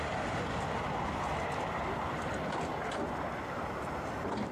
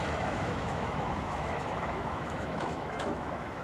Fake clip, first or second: second